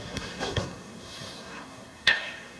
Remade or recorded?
remade